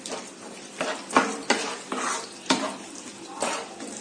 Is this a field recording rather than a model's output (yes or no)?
no